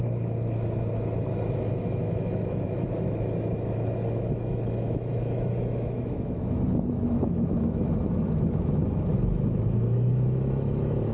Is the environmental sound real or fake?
fake